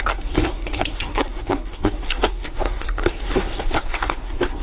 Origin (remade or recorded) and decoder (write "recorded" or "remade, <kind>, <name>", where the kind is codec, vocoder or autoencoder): remade, codec, SNAC